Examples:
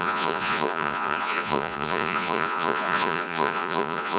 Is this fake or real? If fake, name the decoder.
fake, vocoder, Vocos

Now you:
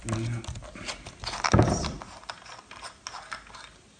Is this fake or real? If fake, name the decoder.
real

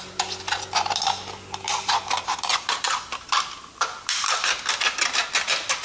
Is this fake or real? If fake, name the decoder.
real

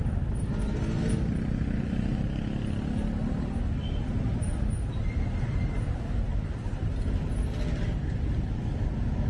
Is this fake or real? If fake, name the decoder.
real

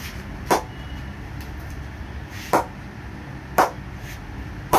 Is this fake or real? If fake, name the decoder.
real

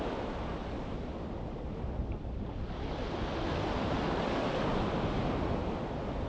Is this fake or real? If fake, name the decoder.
real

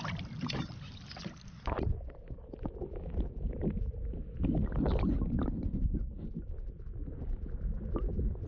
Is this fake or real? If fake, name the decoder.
real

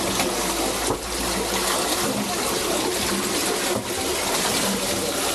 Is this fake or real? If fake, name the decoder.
real